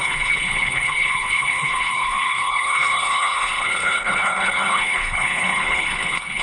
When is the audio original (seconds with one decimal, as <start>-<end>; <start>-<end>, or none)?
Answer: none